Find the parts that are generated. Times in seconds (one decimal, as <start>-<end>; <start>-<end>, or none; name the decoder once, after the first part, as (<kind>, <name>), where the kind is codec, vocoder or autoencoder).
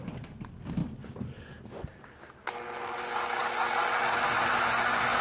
none